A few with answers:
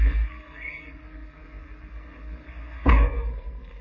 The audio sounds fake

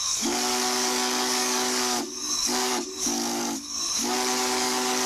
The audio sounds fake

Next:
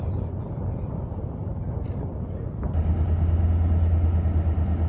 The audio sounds real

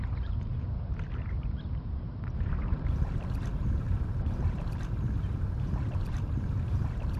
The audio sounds fake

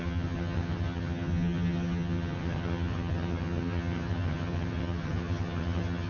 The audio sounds fake